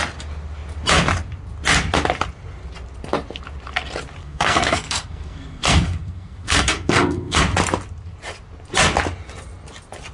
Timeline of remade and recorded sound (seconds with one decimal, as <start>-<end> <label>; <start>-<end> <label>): 0.0-4.2 recorded; 4.2-7.4 remade; 7.4-10.1 recorded